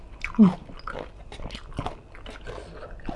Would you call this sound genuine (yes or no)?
yes